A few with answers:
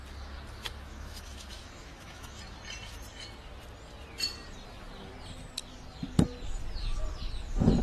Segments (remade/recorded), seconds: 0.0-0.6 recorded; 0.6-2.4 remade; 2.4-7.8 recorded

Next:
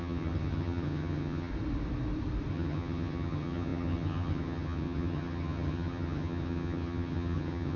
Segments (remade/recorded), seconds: 0.0-1.5 remade; 1.5-2.5 recorded; 2.5-7.8 remade